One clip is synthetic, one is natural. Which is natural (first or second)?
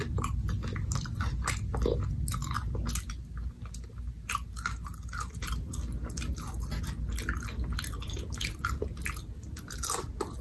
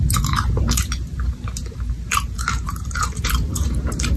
first